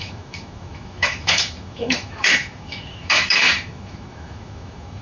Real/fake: fake